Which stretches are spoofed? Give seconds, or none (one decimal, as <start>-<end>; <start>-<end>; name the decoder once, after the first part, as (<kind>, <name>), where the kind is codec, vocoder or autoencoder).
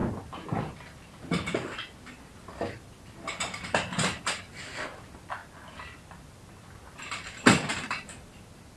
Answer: 7.7-8.3 (vocoder, BigVGAN v2)